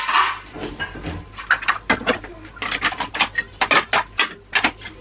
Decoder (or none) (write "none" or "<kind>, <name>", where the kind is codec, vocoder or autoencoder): none